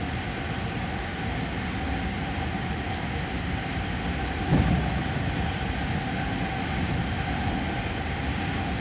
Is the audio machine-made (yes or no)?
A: no